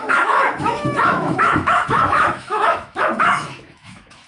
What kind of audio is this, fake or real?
fake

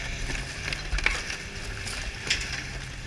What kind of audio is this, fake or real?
real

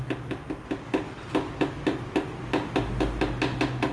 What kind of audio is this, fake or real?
real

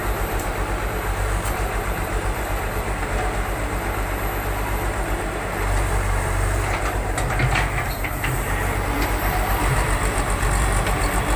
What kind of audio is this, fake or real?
fake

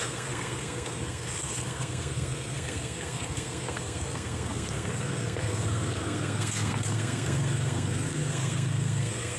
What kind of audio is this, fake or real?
fake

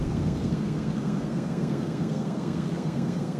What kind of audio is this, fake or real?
fake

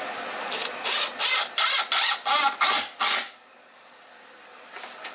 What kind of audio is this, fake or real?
real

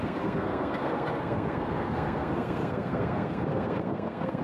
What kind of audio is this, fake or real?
fake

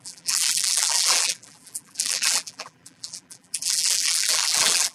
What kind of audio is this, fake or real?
fake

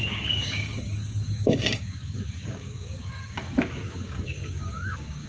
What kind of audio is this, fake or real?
fake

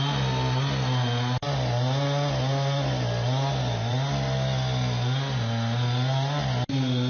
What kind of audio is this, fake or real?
real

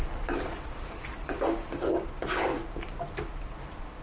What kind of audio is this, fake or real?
real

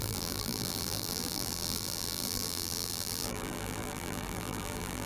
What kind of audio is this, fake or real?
fake